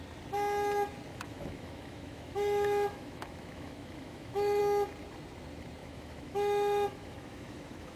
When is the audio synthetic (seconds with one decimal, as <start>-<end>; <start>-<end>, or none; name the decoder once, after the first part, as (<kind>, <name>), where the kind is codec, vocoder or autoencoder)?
1.1-4.6 (autoencoder, DAC-VAE); 5.8-8.0